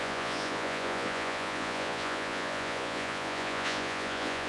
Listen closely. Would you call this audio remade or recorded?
remade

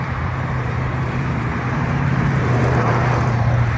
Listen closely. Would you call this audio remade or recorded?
remade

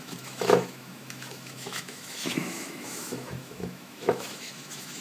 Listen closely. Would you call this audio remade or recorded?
remade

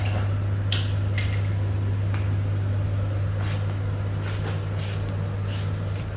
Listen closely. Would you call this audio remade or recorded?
recorded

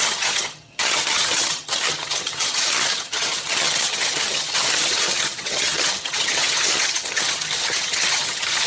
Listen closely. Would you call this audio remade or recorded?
remade